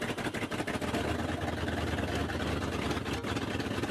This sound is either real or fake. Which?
real